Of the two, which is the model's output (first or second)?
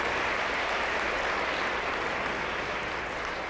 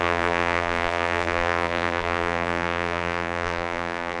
second